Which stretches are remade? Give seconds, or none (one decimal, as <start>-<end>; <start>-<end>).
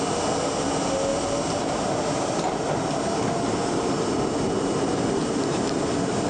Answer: none